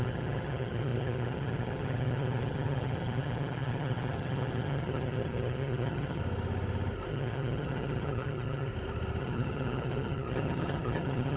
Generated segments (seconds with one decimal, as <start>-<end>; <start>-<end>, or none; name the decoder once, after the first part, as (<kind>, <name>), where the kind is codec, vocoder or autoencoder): 0.0-6.2 (vocoder, HiFi-GAN); 7.1-8.7; 9.2-11.4